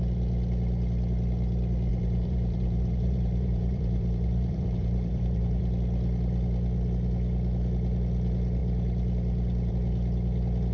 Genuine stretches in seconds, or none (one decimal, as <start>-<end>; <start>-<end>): 0.0-1.9; 5.6-10.7